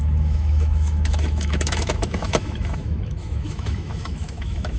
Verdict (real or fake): fake